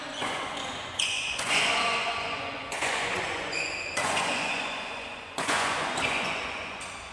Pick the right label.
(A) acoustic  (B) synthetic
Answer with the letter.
B